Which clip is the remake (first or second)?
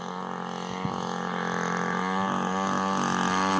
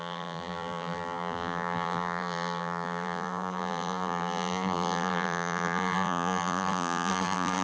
second